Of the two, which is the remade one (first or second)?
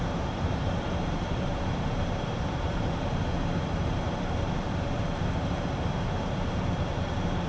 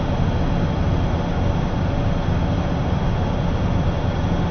first